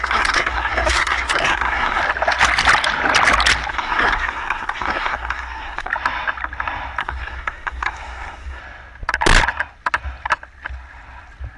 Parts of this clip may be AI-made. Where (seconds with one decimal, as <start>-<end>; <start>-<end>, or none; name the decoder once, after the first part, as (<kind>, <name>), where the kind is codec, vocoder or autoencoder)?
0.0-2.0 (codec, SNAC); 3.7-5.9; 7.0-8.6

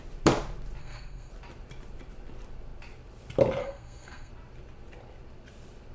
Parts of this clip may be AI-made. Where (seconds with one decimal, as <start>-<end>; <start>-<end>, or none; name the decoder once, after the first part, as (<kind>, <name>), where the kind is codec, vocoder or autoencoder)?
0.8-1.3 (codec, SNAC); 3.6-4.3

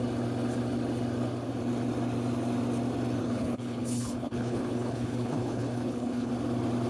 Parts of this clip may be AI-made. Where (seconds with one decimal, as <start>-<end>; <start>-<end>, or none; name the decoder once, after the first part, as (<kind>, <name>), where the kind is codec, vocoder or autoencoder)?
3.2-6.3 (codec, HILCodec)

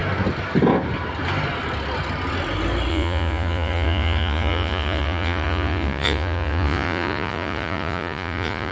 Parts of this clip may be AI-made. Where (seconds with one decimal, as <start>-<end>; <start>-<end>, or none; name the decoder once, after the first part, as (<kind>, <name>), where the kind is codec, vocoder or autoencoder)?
2.9-8.7 (vocoder, Vocos)

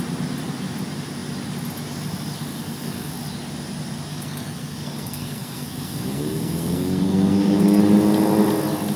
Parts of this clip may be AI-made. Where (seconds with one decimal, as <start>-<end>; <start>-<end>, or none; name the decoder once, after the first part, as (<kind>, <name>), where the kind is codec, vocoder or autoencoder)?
2.5-3.1 (codec, SNAC); 4.1-7.8

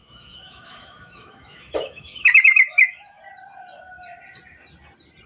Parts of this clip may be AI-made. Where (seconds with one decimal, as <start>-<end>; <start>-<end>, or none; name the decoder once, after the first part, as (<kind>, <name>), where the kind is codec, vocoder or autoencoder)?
0.0-3.2 (autoencoder, DAC-VAE)

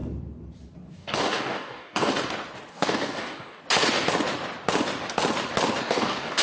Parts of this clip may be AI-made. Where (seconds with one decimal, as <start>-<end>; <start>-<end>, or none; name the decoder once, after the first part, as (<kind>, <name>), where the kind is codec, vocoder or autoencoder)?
0.9-2.1 (codec, DAC); 2.7-3.6; 5.8-6.4